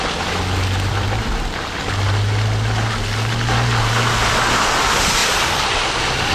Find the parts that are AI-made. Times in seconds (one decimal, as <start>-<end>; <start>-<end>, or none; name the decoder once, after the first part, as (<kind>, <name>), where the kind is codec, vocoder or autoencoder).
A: none